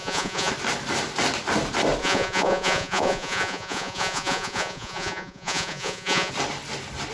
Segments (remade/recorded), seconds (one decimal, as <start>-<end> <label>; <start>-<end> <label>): 0.0-0.5 remade; 0.5-2.0 recorded; 2.0-6.3 remade; 6.3-7.1 recorded